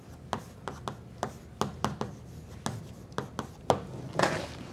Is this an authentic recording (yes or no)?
yes